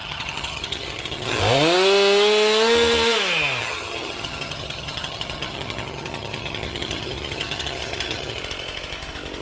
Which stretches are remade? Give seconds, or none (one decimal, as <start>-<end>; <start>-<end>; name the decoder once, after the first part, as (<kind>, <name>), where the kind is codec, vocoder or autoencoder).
0.0-1.4 (vocoder, HiFi-GAN); 3.6-8.4